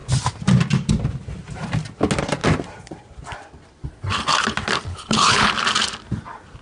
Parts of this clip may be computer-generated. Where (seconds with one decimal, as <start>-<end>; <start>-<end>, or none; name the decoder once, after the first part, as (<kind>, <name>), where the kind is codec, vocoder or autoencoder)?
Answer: 4.9-5.5 (codec, HILCodec)